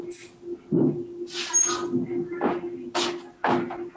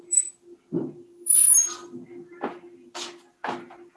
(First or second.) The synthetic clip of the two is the second